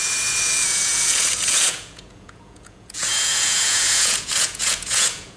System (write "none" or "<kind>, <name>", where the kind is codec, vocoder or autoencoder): vocoder, Vocos